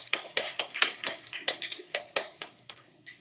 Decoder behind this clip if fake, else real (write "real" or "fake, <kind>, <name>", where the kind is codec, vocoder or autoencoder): fake, codec, SNAC